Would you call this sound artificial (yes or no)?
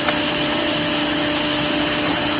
no